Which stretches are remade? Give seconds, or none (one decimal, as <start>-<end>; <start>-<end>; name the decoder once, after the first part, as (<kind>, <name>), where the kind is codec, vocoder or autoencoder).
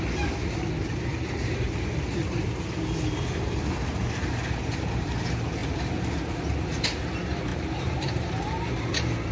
7.5-8.3 (vocoder, BigVGAN v2)